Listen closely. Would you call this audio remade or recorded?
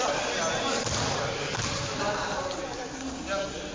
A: recorded